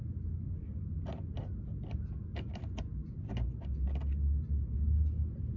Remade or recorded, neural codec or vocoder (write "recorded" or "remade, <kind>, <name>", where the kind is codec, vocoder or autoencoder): recorded